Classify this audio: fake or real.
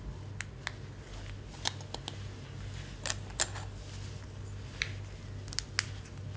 real